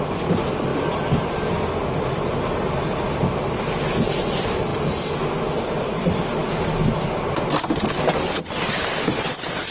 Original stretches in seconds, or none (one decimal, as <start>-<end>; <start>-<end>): 0.0-9.7